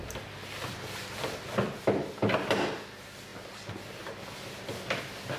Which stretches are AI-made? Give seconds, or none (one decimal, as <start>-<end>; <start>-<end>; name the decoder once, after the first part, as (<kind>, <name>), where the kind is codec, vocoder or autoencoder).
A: none